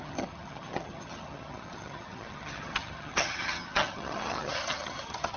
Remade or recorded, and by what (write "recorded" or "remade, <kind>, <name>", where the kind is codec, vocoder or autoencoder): remade, vocoder, HiFi-GAN